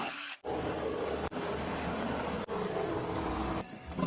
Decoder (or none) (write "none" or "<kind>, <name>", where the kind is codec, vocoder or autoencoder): codec, DAC